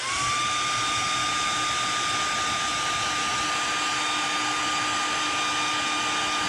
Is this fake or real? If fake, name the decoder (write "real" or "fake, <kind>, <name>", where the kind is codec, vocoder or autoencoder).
real